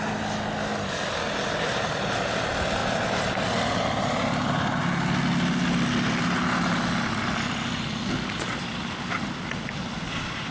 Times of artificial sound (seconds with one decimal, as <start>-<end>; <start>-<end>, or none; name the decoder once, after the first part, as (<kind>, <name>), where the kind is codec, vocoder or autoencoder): none